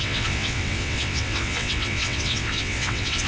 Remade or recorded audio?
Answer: remade